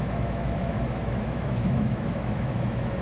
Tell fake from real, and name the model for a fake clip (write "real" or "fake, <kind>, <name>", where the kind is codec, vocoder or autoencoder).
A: fake, autoencoder, DAC-VAE